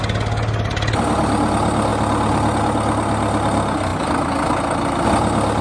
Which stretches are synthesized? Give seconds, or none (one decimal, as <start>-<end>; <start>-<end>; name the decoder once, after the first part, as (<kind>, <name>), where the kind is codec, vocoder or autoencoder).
none